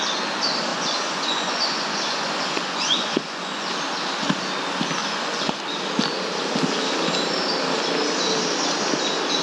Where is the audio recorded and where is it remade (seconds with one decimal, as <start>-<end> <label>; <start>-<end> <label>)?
0.0-0.7 recorded; 0.7-3.7 remade; 3.7-5.0 recorded; 5.0-5.6 remade; 5.6-9.4 recorded

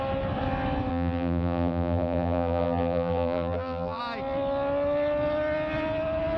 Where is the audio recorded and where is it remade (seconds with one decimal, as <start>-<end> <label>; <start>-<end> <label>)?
0.0-0.9 recorded; 0.9-4.0 remade; 4.0-6.4 recorded

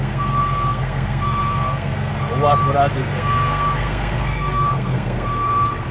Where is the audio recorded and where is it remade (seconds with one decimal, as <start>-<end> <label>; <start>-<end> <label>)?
0.0-2.1 remade; 2.1-2.9 recorded; 2.9-5.9 remade